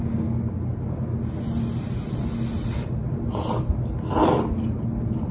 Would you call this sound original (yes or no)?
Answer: yes